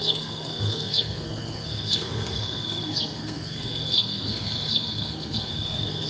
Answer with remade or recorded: remade